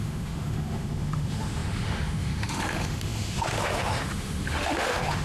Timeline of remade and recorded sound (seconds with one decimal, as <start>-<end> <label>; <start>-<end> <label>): 0.0-5.2 remade